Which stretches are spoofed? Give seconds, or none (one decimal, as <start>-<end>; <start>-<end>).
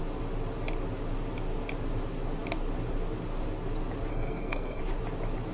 4.1-4.8